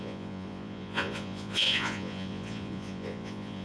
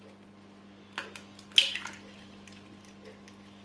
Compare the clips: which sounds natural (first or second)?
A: second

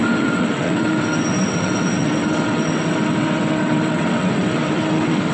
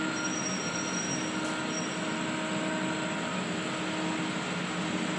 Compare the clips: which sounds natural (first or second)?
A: second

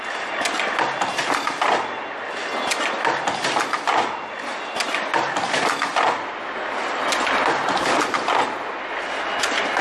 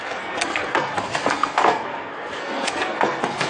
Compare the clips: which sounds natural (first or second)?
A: first